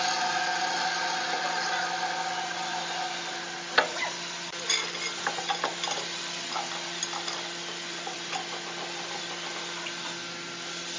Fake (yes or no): no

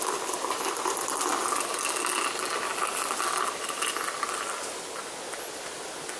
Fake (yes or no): no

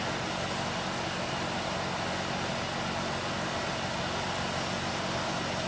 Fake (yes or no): no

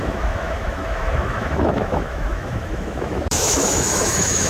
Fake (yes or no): yes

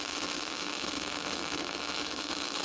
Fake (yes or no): yes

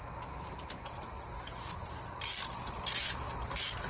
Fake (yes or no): no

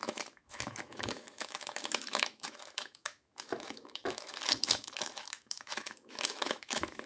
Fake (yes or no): yes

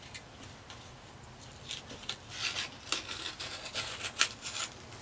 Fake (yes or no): no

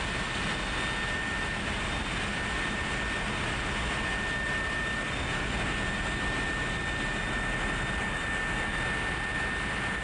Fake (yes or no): no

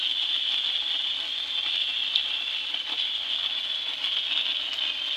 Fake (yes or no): no